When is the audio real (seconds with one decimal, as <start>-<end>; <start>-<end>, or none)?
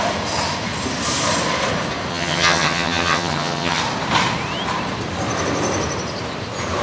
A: 0.0-2.1; 3.8-6.8